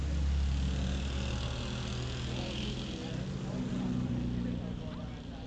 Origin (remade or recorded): recorded